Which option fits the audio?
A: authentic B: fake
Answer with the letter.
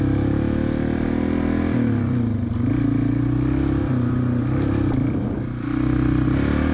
A